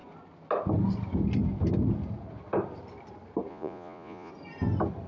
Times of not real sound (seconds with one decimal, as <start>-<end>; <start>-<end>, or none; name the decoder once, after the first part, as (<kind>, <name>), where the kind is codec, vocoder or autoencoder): 3.5-4.3 (vocoder, Vocos)